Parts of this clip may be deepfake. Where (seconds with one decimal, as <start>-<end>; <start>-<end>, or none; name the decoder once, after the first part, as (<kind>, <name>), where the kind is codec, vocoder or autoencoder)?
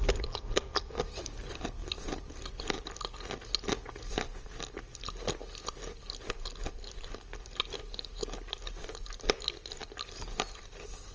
none